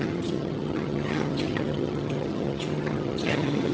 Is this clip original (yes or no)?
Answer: no